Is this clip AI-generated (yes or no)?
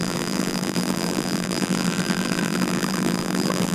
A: yes